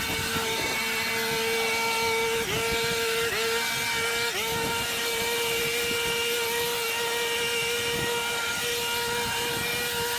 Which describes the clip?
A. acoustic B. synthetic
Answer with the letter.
A